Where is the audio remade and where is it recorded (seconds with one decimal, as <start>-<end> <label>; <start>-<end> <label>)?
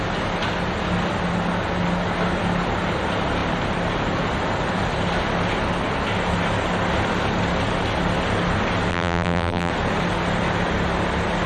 0.0-8.9 recorded; 8.9-9.7 remade; 9.7-11.5 recorded